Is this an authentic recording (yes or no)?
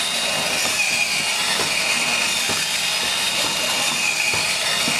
yes